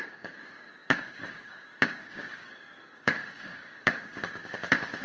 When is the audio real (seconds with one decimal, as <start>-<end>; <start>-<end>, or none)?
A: none